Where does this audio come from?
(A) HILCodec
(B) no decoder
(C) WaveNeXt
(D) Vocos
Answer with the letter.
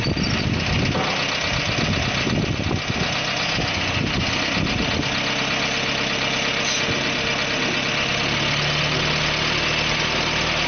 B